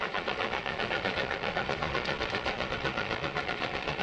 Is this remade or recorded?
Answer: remade